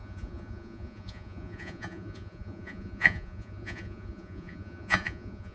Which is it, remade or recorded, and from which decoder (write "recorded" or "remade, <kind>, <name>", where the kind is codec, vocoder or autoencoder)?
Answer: remade, vocoder, Vocos